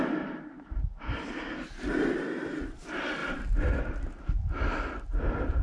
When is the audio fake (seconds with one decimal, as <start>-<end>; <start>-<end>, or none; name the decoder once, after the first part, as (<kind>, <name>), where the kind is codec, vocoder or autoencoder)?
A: none